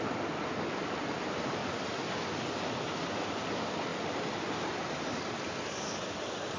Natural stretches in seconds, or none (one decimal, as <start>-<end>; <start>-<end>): 0.0-6.6